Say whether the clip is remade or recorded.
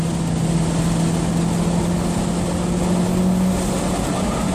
recorded